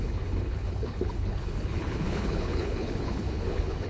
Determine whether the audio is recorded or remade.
remade